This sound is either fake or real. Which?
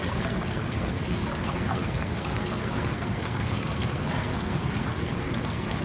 fake